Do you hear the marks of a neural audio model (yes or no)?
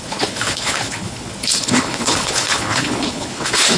yes